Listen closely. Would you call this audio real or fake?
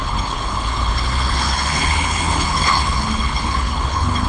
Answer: fake